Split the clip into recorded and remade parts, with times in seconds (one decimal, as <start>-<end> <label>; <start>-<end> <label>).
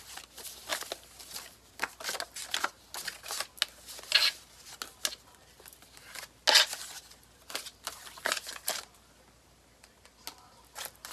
0.0-11.1 recorded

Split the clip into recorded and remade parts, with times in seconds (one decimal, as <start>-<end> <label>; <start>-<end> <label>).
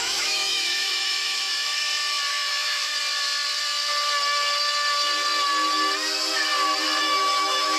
0.0-1.8 remade; 1.8-2.3 recorded; 2.3-2.9 remade; 2.9-7.0 recorded; 7.0-7.8 remade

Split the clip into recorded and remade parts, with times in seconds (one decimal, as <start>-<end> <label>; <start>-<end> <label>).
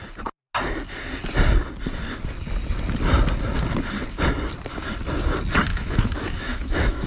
0.0-5.7 recorded; 5.7-7.1 remade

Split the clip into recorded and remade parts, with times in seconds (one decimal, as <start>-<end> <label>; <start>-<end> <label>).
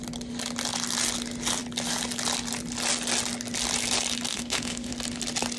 0.0-4.3 recorded; 4.3-4.9 remade; 4.9-5.6 recorded